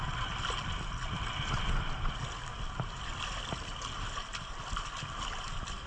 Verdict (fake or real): real